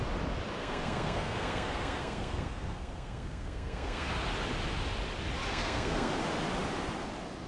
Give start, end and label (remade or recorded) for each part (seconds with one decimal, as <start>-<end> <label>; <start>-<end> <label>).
0.0-0.6 recorded; 0.6-4.1 remade; 4.1-5.5 recorded; 5.5-6.1 remade; 6.1-7.5 recorded